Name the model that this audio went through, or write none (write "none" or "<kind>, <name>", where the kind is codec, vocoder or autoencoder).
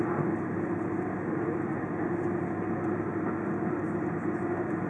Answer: none